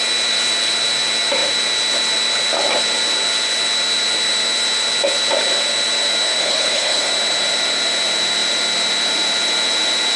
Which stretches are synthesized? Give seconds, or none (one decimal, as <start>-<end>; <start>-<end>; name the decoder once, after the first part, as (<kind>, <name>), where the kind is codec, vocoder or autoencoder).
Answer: 6.4-7.1 (codec, HILCodec)